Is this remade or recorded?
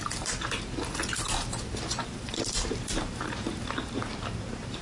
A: remade